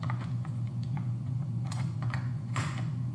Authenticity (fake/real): fake